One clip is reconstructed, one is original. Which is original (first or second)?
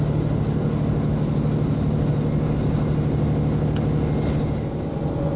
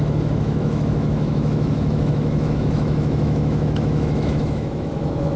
first